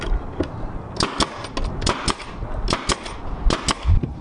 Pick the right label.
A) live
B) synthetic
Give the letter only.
A